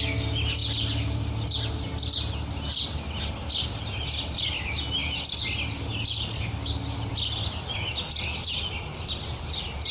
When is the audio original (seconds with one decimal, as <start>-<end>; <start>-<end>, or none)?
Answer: 0.0-9.9